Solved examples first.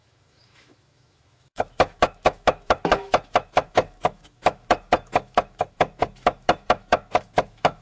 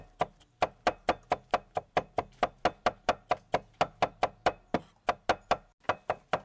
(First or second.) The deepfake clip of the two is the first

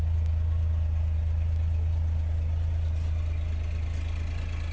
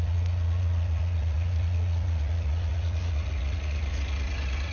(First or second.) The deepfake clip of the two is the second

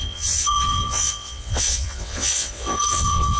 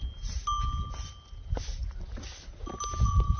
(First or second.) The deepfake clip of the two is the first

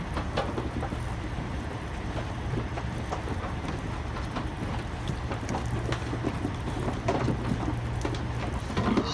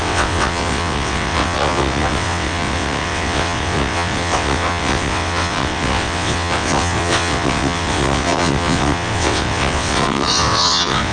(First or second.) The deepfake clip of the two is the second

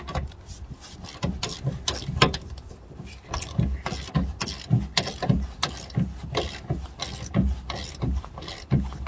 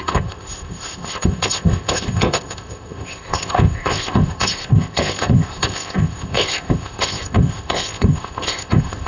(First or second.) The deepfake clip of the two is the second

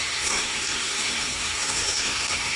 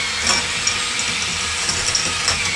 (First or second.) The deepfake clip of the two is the first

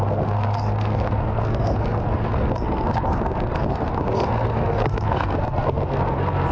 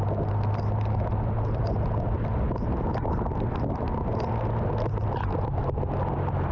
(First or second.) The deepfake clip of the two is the first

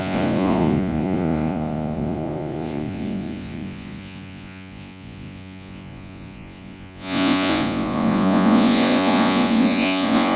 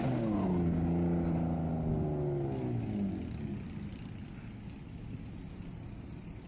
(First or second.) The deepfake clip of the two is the first